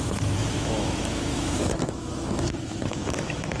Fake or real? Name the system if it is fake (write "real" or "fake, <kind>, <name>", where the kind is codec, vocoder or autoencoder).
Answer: fake, autoencoder, DAC-VAE